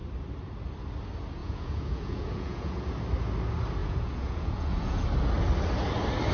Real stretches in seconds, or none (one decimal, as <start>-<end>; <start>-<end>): 0.0-1.4; 2.9-3.8; 5.0-6.3

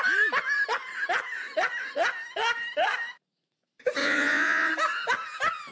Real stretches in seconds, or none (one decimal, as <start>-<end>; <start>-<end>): 0.0-4.0; 4.7-5.7

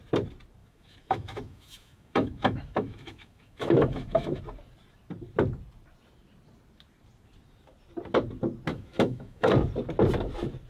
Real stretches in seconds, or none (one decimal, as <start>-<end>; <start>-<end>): 0.0-0.6; 4.4-8.7; 9.5-10.7

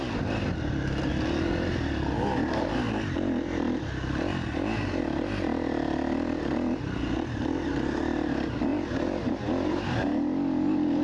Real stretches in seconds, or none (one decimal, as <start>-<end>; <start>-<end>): 0.0-11.0

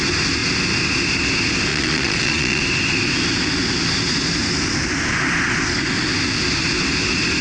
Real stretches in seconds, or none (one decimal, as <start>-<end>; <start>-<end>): 0.0-1.7; 2.6-7.4

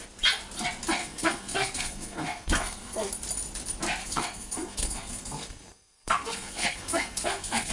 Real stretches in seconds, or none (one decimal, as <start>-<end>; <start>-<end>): 0.0-1.0; 3.1-4.0